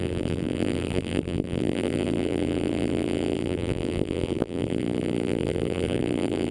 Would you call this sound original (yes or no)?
no